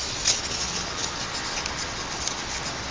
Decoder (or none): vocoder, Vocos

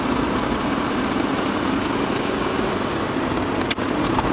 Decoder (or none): none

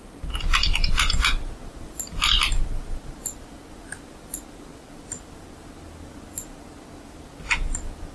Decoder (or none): none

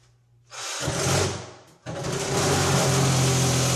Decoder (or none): none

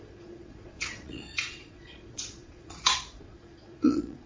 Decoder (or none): vocoder, Vocos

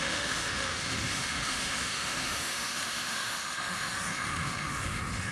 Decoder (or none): autoencoder, DAC-VAE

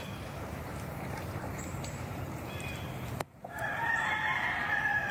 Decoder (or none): vocoder, BigVGAN v2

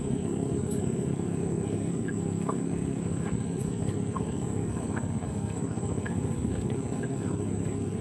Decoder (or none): codec, SNAC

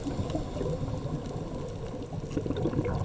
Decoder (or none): none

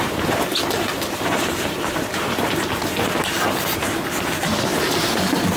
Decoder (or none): vocoder, BigVGAN v2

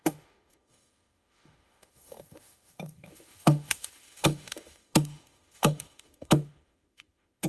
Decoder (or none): autoencoder, DAC-VAE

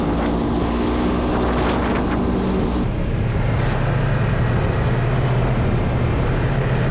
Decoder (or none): none